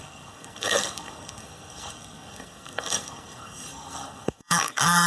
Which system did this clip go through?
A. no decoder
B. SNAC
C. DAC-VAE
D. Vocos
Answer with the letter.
B